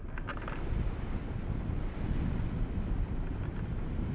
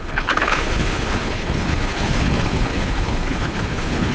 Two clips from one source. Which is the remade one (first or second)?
second